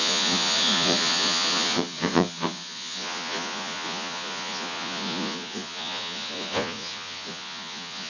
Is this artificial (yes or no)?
yes